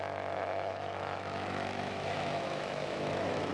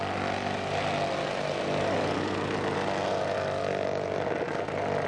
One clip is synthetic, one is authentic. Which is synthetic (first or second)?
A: first